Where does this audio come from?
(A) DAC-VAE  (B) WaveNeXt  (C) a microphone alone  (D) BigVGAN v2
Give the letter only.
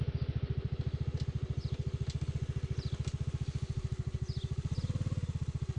C